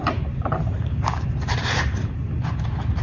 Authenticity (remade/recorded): remade